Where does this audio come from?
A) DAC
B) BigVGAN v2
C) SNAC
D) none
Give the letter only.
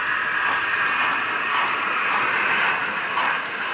D